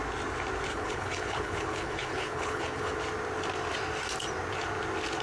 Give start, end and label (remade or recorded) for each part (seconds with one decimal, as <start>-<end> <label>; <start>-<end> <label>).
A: 0.0-0.7 recorded; 0.7-2.9 remade; 2.9-5.2 recorded